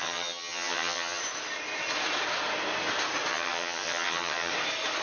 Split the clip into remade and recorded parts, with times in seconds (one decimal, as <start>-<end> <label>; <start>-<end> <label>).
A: 0.0-1.2 remade; 1.2-3.3 recorded; 3.3-4.5 remade; 4.5-5.0 recorded

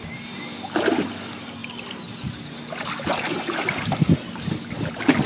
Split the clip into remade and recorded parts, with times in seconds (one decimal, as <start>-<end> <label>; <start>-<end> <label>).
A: 0.0-5.3 recorded